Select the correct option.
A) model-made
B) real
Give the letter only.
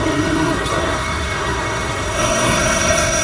A